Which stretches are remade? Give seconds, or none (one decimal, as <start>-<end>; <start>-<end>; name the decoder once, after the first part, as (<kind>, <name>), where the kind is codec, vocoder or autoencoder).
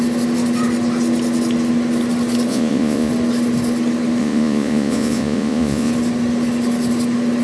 2.5-3.1 (vocoder, Vocos); 4.2-5.9